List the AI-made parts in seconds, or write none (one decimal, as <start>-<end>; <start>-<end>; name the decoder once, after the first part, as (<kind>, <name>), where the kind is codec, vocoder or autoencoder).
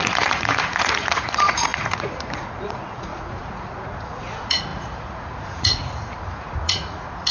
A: 0.0-7.3 (vocoder, Vocos)